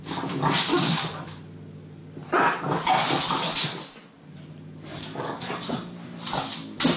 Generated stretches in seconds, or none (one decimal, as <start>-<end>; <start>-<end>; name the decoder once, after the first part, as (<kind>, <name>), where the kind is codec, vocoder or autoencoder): 0.7-1.4 (codec, DAC); 4.9-5.5